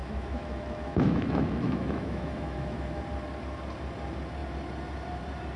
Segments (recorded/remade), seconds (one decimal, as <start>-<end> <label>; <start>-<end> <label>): 0.0-3.0 remade; 3.0-5.6 recorded